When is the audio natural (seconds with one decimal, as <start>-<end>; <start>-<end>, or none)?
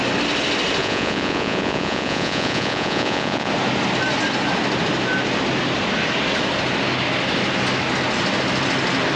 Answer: 0.0-0.8; 3.5-9.2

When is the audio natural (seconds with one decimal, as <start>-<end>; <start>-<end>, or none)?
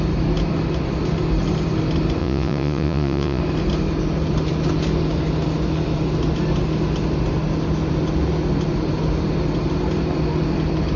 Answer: 0.0-2.2; 3.4-11.0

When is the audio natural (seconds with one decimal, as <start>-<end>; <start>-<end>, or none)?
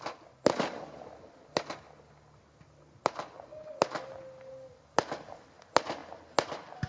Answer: 0.0-6.9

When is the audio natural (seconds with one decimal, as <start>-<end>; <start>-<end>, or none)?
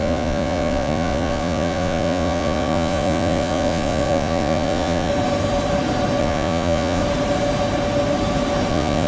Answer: 5.1-6.2; 7.0-8.7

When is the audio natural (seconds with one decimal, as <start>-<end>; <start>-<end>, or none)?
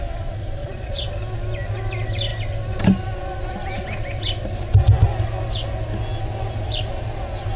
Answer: 0.0-0.6; 1.1-7.6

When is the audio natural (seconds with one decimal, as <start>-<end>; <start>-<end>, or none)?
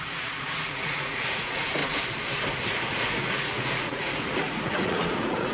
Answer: 1.8-2.7